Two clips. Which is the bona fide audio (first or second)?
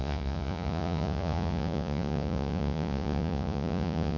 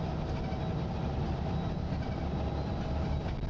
second